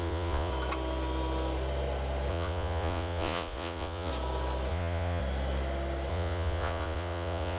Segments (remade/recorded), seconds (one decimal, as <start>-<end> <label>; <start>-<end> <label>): 0.0-0.5 remade; 0.5-2.3 recorded; 2.3-4.1 remade; 4.1-4.7 recorded; 4.7-5.2 remade; 5.2-6.1 recorded; 6.1-7.6 remade

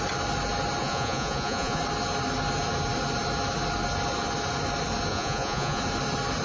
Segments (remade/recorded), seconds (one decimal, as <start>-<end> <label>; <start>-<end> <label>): 0.0-0.8 recorded; 0.8-1.8 remade; 1.8-5.1 recorded; 5.1-5.8 remade; 5.8-6.4 recorded

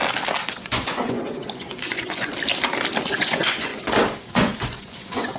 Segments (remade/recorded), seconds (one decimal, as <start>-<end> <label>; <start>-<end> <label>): 0.0-0.5 recorded; 0.5-2.3 remade; 2.3-3.1 recorded; 3.1-3.7 remade; 3.7-4.2 recorded; 4.2-5.4 remade